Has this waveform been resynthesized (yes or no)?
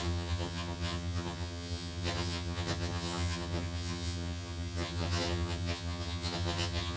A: yes